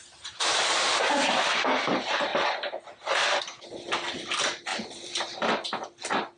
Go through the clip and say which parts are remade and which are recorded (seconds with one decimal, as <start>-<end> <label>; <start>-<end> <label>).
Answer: 0.0-4.7 recorded; 4.7-5.5 remade; 5.5-6.4 recorded